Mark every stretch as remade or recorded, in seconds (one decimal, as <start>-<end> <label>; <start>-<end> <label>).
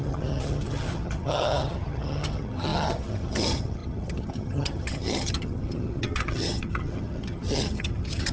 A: 0.0-8.3 remade